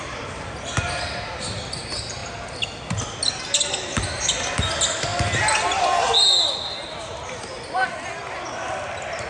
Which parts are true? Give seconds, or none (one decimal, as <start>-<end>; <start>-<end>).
0.0-9.3